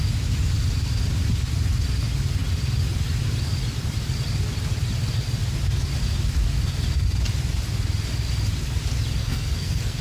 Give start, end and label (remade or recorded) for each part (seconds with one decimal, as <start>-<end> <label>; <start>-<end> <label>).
0.0-9.2 recorded; 9.2-10.0 remade